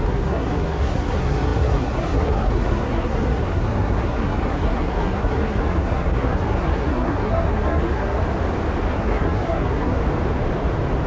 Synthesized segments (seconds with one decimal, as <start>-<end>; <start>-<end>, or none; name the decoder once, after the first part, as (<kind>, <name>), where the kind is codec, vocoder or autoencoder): 0.0-8.2 (codec, SNAC); 8.9-10.0